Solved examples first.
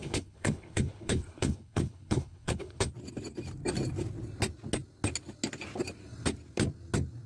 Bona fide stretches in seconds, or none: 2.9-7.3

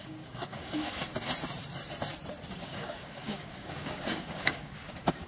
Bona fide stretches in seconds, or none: 1.1-2.5

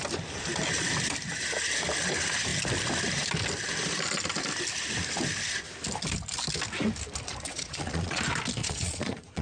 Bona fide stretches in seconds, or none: 0.0-7.5; 8.2-8.6

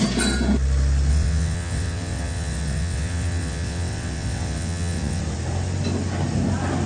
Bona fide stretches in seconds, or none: 0.0-1.1; 5.2-6.9

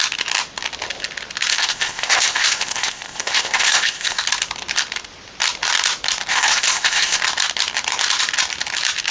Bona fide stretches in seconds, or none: 0.0-1.5; 4.2-6.3; 7.2-9.1

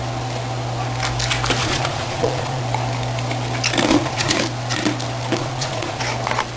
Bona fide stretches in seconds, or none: 0.0-1.6; 2.6-3.9; 4.4-5.4; 6.0-6.6

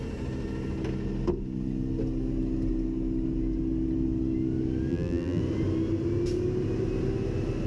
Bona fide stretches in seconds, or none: 0.0-4.9; 5.4-7.7